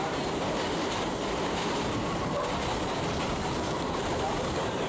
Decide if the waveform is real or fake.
fake